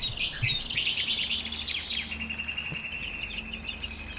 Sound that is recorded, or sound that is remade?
recorded